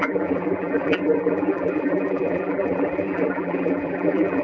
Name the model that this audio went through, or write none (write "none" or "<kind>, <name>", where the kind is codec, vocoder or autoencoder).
vocoder, BigVGAN v2